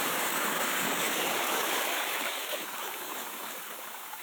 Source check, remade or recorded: remade